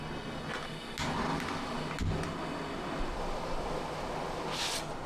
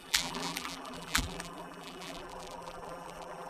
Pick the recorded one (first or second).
first